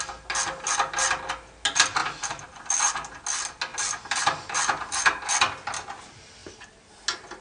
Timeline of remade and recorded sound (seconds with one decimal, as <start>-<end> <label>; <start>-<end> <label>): 0.0-7.4 recorded